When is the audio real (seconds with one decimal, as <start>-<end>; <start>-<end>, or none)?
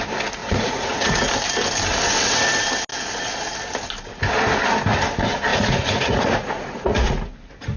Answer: 0.0-0.4; 1.3-5.5; 7.3-7.8